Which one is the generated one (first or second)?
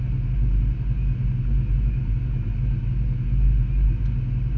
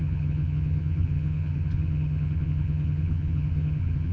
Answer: second